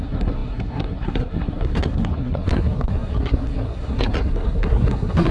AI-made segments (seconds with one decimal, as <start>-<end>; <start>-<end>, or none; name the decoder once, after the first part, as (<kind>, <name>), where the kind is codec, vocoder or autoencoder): 0.0-5.3 (codec, SNAC)